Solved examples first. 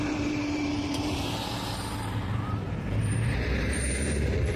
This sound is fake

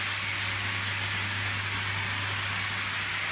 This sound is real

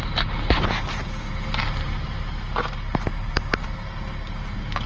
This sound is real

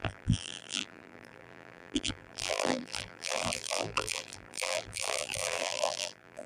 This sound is fake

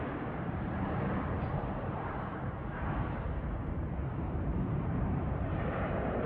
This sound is fake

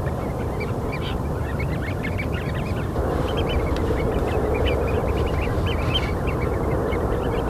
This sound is fake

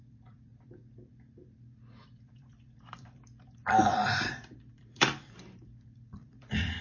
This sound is fake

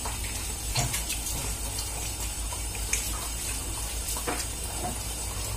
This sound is real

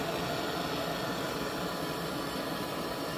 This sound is real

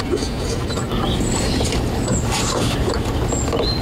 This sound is real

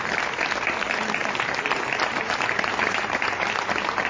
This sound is fake